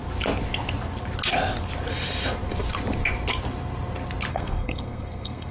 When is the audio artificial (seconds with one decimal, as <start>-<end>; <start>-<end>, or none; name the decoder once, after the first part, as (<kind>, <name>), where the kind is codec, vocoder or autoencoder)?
4.3-5.5 (codec, SNAC)